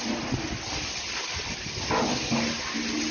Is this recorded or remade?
recorded